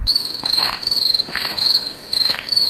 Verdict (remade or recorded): remade